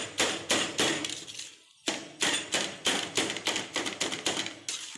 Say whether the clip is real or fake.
real